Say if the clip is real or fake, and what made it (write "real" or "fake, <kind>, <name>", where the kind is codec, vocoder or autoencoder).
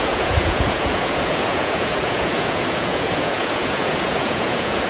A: fake, vocoder, Vocos